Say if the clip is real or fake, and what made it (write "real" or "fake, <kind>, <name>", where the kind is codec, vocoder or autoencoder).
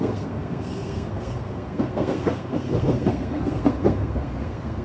fake, codec, SNAC